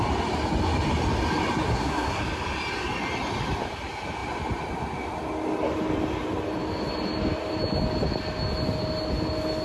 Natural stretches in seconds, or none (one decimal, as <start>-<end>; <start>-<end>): 0.0-1.7; 2.2-9.6